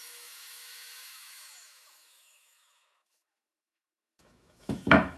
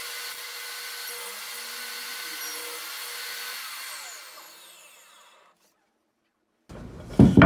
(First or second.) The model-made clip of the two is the first